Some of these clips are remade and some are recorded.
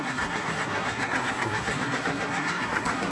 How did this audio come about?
remade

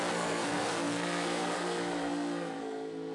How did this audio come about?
remade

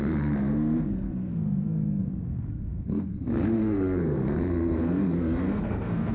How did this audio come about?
remade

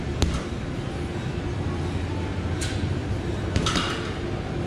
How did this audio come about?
recorded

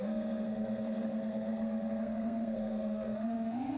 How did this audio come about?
remade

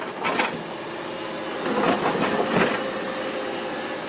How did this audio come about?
recorded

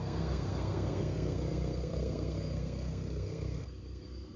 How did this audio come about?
remade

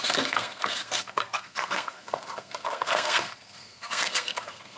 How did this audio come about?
remade